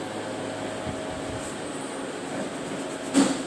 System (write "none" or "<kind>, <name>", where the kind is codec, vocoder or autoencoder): none